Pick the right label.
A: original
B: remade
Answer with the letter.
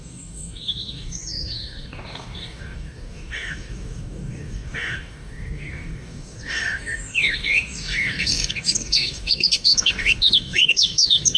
B